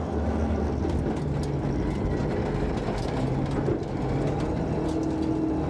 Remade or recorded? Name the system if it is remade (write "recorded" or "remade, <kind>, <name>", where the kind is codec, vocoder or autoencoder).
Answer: recorded